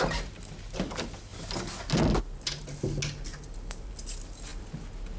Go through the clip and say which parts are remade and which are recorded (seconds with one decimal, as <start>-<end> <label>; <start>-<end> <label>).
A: 0.0-5.2 recorded